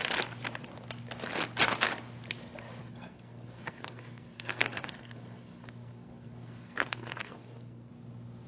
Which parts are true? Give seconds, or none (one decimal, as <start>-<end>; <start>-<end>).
0.0-2.8; 7.9-8.5

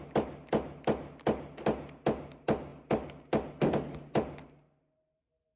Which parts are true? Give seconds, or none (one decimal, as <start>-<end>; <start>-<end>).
0.0-5.6

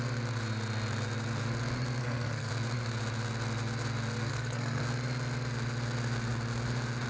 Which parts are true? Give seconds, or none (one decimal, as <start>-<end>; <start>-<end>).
0.0-2.0; 2.5-4.3; 4.8-7.1

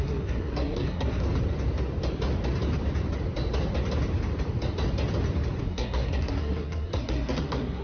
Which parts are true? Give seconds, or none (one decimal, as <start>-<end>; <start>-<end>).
1.2-5.6